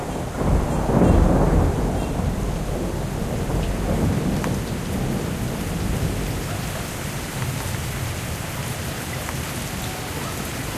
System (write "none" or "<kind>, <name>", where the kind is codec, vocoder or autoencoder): none